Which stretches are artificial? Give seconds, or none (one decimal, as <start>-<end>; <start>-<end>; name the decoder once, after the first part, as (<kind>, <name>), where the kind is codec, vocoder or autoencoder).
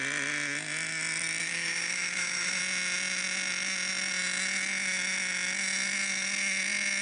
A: 1.4-2.6 (autoencoder, DAC-VAE)